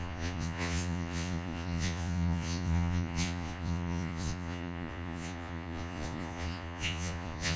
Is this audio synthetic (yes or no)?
yes